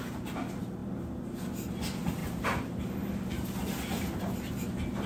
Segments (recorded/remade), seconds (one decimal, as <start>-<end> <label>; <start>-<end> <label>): 0.0-5.1 recorded